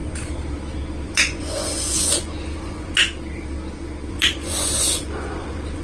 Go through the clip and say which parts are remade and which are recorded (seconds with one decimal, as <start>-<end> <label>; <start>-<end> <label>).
0.0-1.1 recorded; 1.1-3.0 remade; 3.0-4.1 recorded; 4.1-5.8 remade